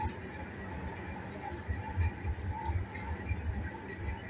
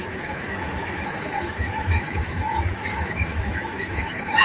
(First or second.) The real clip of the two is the first